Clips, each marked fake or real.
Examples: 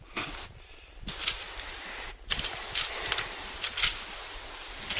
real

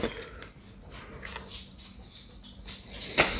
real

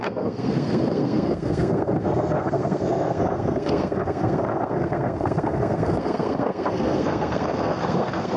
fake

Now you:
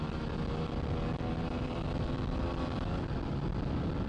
real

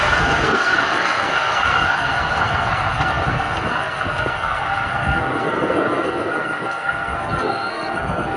fake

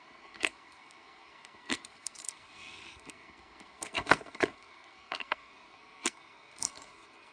fake